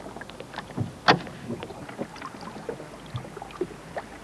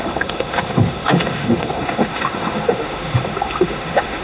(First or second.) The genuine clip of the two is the first